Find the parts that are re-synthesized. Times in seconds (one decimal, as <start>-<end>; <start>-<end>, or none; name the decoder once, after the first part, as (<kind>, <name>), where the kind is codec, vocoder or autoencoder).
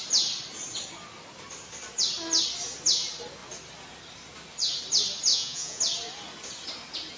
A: 5.3-5.8 (vocoder, Vocos)